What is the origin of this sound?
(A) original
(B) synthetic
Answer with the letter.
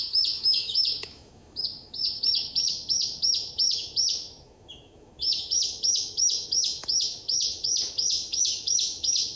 B